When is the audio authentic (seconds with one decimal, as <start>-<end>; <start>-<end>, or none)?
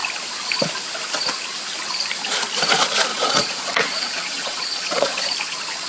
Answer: 0.0-3.1; 5.2-5.9